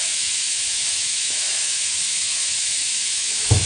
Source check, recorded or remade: remade